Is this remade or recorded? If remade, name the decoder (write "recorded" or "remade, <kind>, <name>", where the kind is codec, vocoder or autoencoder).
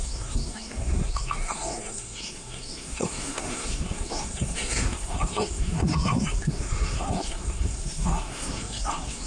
remade, codec, SNAC